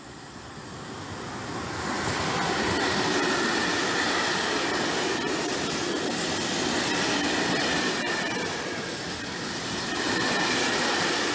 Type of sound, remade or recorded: recorded